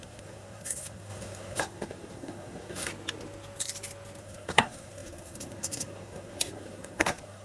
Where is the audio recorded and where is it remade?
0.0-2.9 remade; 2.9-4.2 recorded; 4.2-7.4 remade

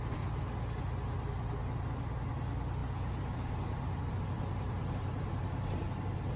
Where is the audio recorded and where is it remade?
0.0-6.4 recorded

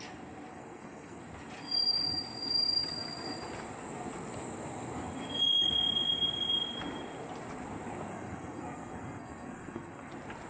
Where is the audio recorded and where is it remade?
0.0-0.5 recorded; 0.5-1.2 remade; 1.2-8.1 recorded; 8.1-10.1 remade; 10.1-10.5 recorded

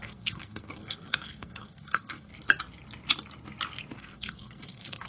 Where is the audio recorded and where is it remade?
0.0-2.3 remade; 2.3-4.0 recorded; 4.0-5.1 remade

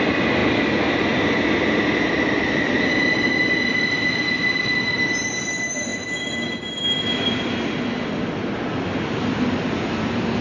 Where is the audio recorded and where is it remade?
0.0-10.4 recorded

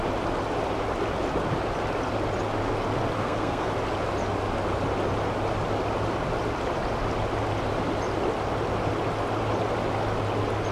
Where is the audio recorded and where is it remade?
0.0-3.2 recorded; 3.2-3.7 remade; 3.7-10.7 recorded

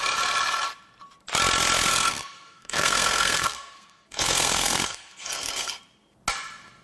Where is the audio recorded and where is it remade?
0.0-1.9 recorded; 1.9-5.8 remade; 5.8-6.8 recorded

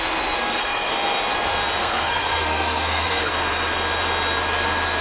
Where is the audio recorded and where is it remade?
0.0-0.4 recorded; 0.4-0.9 remade; 0.9-1.8 recorded; 1.8-3.3 remade; 3.3-5.0 recorded